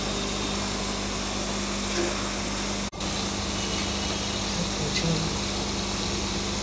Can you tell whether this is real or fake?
real